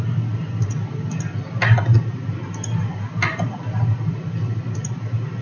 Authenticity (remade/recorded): recorded